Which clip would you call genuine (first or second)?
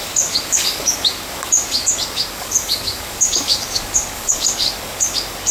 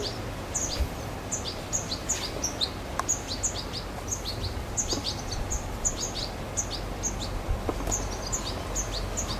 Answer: second